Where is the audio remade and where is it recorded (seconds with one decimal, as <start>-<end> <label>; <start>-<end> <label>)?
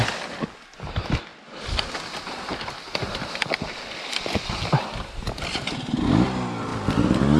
0.0-7.4 recorded